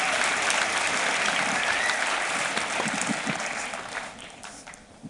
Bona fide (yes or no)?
no